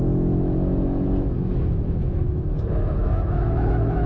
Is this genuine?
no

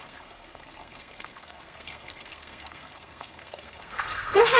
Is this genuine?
no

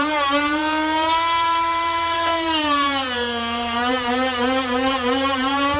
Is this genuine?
no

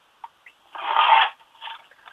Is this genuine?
yes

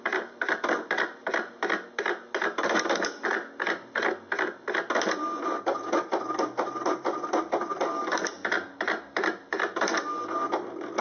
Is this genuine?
yes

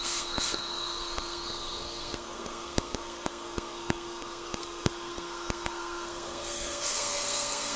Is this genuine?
no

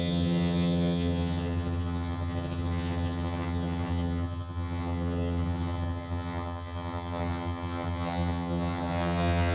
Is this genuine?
no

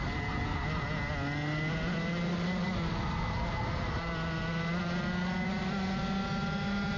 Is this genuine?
yes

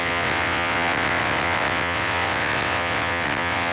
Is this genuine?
no